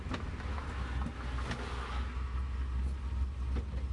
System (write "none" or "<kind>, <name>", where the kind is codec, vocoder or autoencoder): none